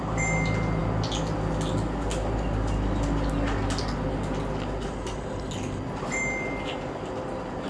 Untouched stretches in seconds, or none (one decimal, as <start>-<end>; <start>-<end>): 0.0-7.7